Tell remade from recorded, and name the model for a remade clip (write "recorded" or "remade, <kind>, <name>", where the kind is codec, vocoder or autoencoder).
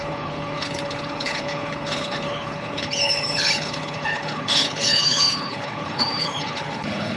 remade, codec, HILCodec